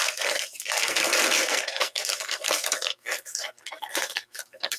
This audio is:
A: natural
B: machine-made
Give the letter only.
B